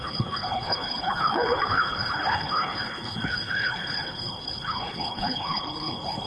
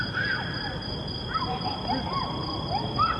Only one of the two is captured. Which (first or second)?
second